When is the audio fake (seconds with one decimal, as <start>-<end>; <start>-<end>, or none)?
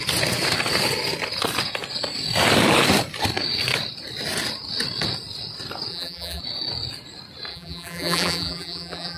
5.9-6.4; 7.5-9.2